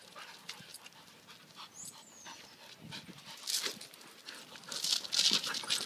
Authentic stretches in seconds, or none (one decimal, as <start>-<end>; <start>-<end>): 0.0-5.9